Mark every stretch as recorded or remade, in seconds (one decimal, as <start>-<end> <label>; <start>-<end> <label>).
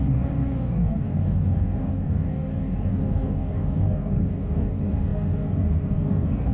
0.0-6.5 remade